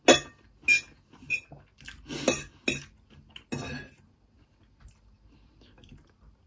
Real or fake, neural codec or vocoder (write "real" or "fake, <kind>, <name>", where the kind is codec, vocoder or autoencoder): real